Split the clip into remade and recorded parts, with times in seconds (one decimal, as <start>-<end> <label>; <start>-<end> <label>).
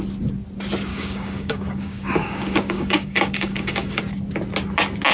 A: 0.0-0.9 recorded; 0.9-4.0 remade; 4.0-5.1 recorded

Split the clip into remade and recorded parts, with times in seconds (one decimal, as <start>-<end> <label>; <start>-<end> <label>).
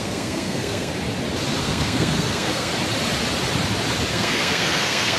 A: 0.0-0.9 remade; 0.9-1.6 recorded; 1.6-2.7 remade; 2.7-4.1 recorded; 4.1-5.2 remade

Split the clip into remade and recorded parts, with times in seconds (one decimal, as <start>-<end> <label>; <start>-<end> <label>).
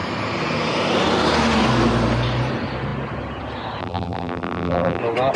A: 0.0-3.8 recorded; 3.8-5.0 remade; 5.0-5.4 recorded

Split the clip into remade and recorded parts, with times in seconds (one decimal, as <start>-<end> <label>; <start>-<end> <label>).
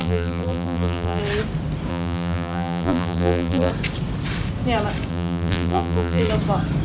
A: 0.0-1.2 remade; 1.2-1.9 recorded; 1.9-3.7 remade; 3.7-5.1 recorded; 5.1-6.3 remade; 6.3-6.8 recorded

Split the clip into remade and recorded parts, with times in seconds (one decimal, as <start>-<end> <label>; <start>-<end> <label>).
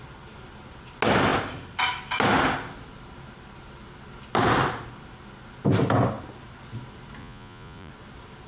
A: 0.0-7.2 recorded; 7.2-7.9 remade; 7.9-8.5 recorded